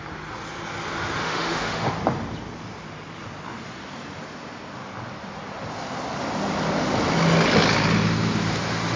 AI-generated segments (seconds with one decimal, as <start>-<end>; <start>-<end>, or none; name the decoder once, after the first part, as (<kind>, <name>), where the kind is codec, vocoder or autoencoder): 1.2-1.9 (autoencoder, DAC-VAE)